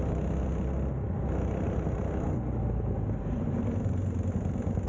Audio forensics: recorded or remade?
recorded